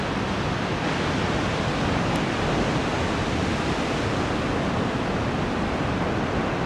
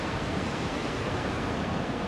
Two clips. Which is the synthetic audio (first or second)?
second